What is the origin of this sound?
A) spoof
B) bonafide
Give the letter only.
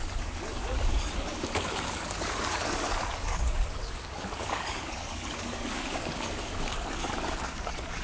A